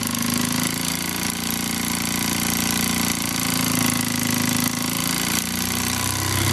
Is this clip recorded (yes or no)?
yes